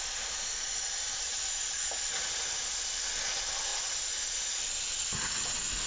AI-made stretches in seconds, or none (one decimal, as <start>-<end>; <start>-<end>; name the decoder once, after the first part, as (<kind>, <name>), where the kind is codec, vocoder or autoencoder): none

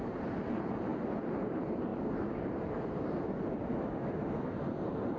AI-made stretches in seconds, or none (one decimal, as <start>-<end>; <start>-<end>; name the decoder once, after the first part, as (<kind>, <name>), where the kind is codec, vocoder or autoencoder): 3.7-4.6 (autoencoder, DAC-VAE)

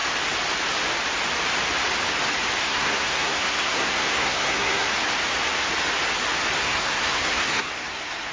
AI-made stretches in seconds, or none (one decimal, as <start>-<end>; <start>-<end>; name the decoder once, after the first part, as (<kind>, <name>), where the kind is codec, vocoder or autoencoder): 2.6-4.9 (codec, SNAC); 6.6-8.3

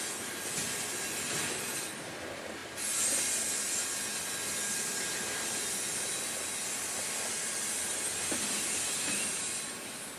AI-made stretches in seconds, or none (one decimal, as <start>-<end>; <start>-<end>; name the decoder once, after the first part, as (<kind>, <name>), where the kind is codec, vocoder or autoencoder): none

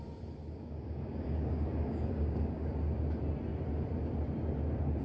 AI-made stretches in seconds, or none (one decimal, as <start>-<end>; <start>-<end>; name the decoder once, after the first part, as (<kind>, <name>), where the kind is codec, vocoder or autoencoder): 0.4-2.7 (codec, DAC)

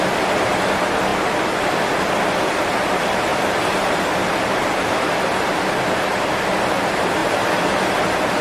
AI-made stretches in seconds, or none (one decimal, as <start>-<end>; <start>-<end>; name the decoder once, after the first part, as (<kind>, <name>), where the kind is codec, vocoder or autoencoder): 3.3-4.1 (vocoder, BigVGAN v2); 7.2-8.4

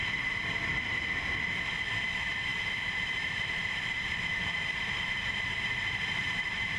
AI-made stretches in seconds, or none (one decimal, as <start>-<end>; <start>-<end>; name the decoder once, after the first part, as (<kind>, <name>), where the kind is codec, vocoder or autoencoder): 2.5-6.8 (vocoder, BigVGAN v2)